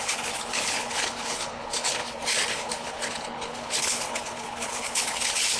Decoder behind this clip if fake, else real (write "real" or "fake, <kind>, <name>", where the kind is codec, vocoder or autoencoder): fake, codec, HILCodec